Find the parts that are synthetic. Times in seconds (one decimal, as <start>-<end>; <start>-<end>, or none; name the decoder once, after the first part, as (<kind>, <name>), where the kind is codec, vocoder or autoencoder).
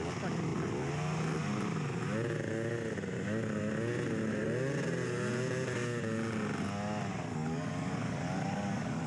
7.1-9.1 (codec, DAC)